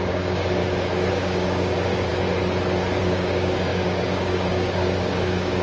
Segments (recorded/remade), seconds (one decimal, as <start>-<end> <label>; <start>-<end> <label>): 0.0-0.6 remade; 0.6-1.1 recorded; 1.1-2.1 remade; 2.1-3.0 recorded; 3.0-5.6 remade